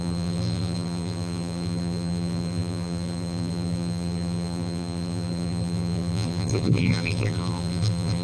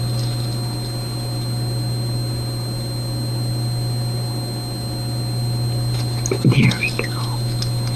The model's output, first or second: first